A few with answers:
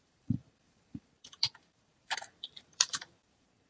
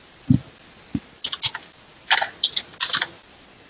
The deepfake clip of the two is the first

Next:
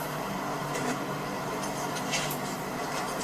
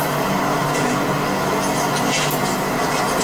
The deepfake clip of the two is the first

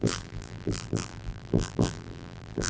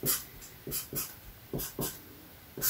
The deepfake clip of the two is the first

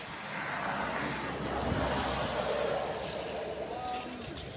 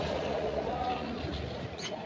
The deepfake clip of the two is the second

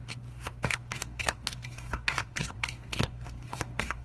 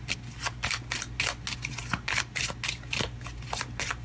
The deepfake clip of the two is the first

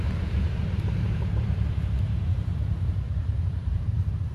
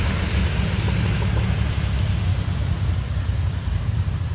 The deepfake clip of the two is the first